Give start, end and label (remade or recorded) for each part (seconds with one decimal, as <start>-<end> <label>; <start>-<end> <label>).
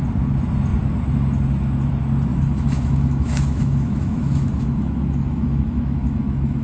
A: 0.0-2.3 recorded; 2.3-6.6 remade